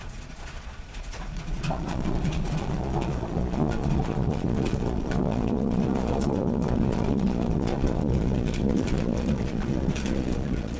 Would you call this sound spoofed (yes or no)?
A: yes